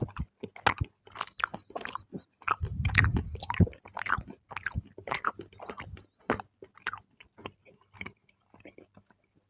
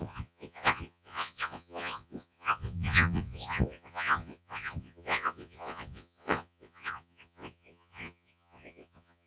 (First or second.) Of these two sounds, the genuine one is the first